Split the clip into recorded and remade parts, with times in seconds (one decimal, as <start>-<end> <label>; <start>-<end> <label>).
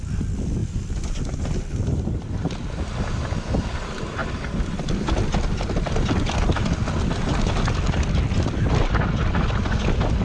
0.0-0.6 recorded; 0.6-2.5 remade; 2.5-10.2 recorded